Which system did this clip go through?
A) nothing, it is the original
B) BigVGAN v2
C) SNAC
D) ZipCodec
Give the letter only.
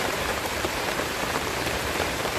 B